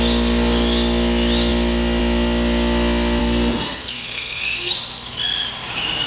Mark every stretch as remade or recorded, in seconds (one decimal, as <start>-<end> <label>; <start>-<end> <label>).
0.0-3.2 recorded; 3.2-4.7 remade; 4.7-6.1 recorded